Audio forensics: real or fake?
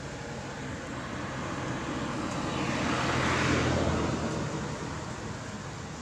real